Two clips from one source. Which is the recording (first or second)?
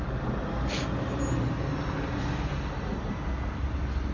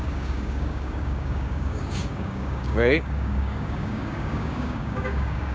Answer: first